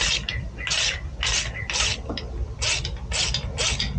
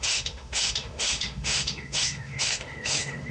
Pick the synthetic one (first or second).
second